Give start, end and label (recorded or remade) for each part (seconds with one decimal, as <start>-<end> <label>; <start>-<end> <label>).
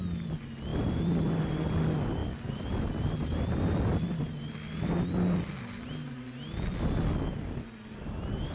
0.0-8.5 recorded